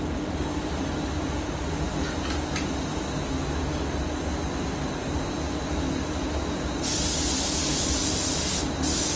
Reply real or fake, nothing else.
real